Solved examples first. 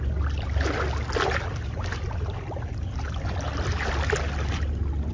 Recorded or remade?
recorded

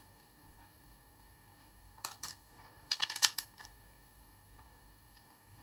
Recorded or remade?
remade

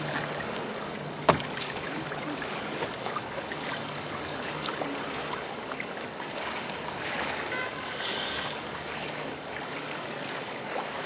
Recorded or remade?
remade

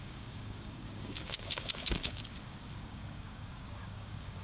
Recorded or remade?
remade